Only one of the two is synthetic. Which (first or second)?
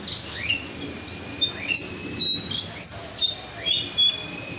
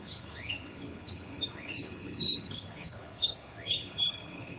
second